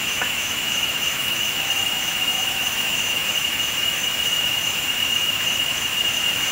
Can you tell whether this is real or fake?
fake